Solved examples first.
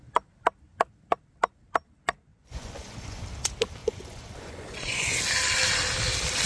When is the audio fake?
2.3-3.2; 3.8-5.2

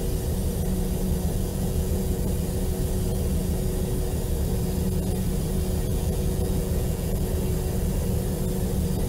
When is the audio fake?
1.5-2.2; 5.9-7.2

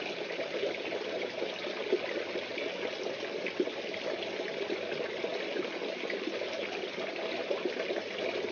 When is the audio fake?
none

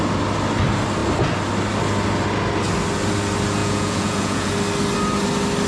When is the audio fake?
3.6-4.5

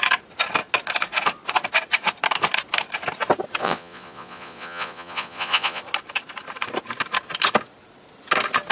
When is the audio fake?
3.6-5.8